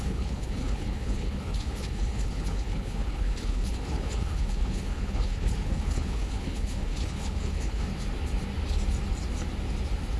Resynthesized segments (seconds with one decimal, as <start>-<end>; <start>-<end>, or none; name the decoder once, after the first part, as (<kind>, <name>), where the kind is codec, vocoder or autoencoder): 0.0-7.9 (codec, HILCodec)